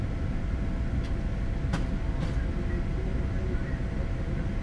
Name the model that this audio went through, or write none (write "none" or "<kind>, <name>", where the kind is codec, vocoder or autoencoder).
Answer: none